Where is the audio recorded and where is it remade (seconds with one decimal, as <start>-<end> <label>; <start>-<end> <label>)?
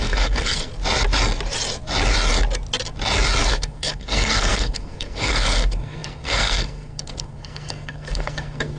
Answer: 0.0-0.7 remade; 0.7-3.4 recorded; 3.4-8.8 remade